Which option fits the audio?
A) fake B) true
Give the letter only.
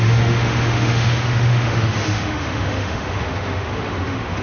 A